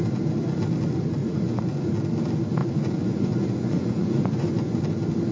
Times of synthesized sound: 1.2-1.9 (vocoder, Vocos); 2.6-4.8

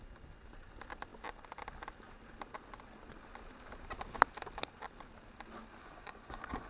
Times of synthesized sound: 5.8-6.7 (vocoder, Vocos)

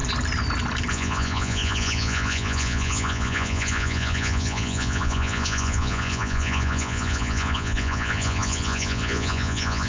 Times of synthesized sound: 0.9-9.9 (vocoder, Vocos)

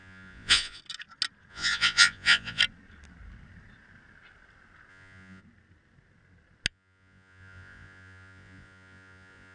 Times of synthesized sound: 0.0-0.8 (vocoder, Vocos); 1.5-2.6; 4.9-5.4; 6.7-9.5

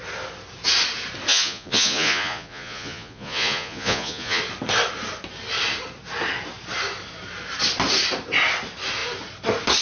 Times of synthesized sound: 1.3-4.4 (vocoder, Vocos)

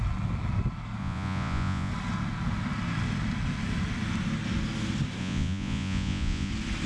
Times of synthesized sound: 1.0-1.9 (vocoder, Vocos); 5.2-6.5

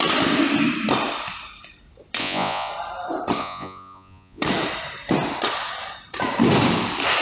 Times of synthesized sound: 2.2-2.7 (vocoder, Vocos); 3.4-4.4